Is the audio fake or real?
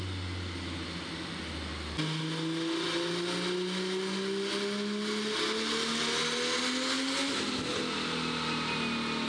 real